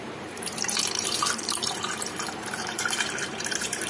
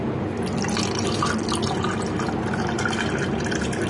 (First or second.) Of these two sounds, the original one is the second